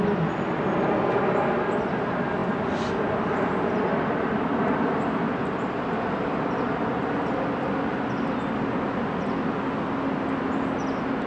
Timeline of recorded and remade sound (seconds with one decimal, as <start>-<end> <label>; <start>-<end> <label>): 0.0-11.3 recorded